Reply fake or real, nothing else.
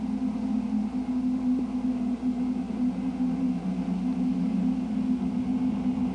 real